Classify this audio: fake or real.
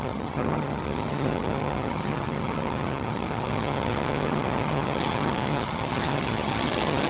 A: fake